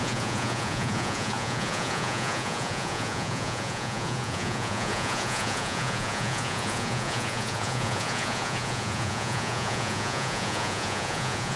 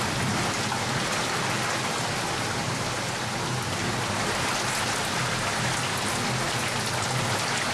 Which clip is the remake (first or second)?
first